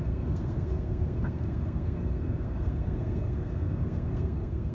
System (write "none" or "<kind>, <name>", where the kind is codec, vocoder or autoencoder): codec, SNAC